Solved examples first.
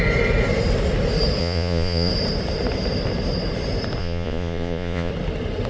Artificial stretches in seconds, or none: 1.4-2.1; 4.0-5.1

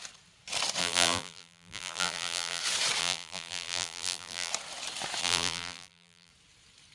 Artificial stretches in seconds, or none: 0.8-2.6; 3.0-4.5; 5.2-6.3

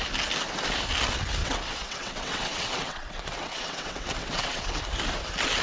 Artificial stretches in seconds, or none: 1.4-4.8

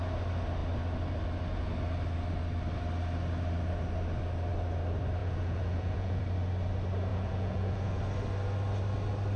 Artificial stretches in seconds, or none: 5.2-6.2; 7.1-8.0

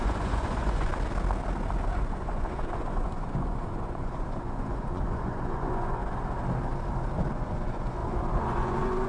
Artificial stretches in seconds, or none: 0.0-0.9; 1.8-6.0; 7.3-9.1

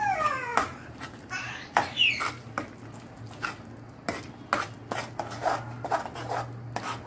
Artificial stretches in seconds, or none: 0.5-2.1

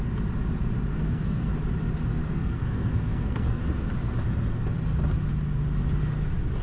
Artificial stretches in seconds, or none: 0.9-1.5; 2.2-3.6

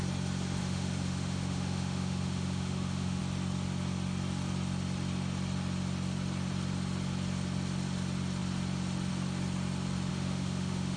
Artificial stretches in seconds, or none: 0.6-3.2; 10.1-11.0